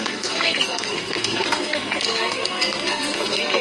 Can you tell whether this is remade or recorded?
remade